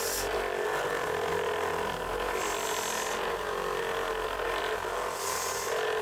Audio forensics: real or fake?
real